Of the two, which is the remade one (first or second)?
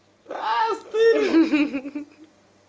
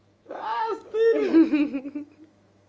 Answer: second